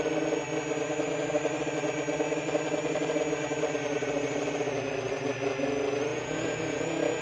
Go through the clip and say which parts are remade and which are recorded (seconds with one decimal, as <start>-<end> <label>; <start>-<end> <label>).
0.0-6.1 recorded; 6.1-7.2 remade